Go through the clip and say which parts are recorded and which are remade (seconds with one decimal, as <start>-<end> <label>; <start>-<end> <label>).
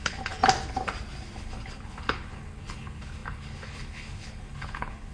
0.0-0.4 remade; 0.4-1.4 recorded; 1.4-5.1 remade